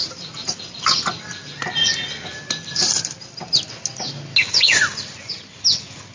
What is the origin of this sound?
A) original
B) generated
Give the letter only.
A